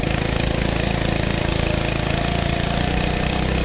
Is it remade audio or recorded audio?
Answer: recorded